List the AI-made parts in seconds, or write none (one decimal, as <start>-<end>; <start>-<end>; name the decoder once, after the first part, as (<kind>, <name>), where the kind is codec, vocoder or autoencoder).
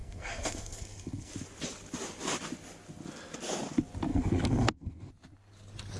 0.0-1.3 (codec, SNAC); 4.1-5.1